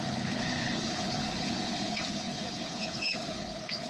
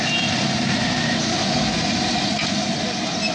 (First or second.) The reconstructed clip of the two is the first